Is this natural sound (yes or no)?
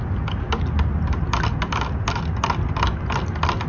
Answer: yes